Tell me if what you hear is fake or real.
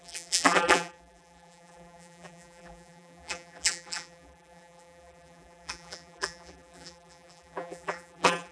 fake